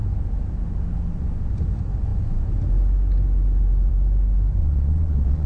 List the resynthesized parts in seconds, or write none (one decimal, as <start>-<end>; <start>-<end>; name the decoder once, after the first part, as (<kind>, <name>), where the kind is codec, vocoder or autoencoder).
4.6-5.5 (vocoder, Vocos)